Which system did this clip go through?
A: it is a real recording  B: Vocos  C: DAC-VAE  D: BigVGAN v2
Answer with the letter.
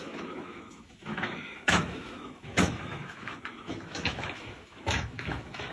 C